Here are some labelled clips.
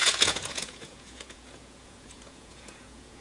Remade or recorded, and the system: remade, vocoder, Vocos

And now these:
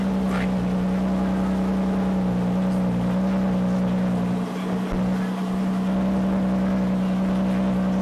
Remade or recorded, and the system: recorded